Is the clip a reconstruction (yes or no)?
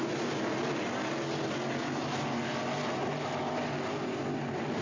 no